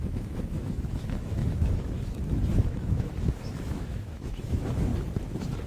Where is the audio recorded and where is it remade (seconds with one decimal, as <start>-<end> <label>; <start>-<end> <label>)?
0.0-4.9 remade; 4.9-5.7 recorded